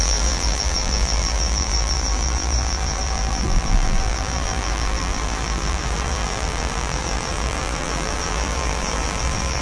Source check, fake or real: fake